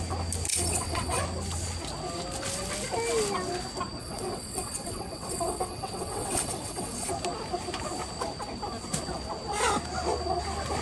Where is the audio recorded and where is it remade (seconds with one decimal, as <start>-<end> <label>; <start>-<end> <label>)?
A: 0.0-0.5 recorded; 0.5-1.2 remade; 1.2-4.0 recorded; 4.0-7.1 remade; 7.1-10.8 recorded